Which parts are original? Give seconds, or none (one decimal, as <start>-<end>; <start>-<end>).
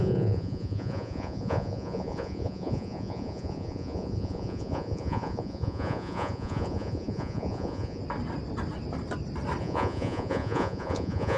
8.0-9.6